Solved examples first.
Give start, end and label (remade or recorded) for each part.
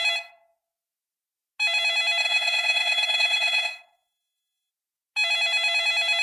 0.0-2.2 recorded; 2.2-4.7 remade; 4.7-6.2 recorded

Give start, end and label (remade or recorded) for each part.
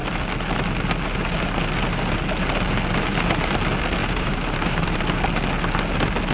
0.0-4.0 recorded; 4.0-5.0 remade; 5.0-6.3 recorded